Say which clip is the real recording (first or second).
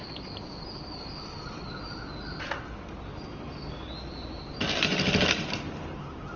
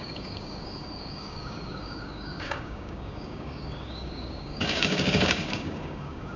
first